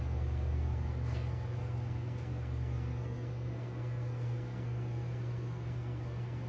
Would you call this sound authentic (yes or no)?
no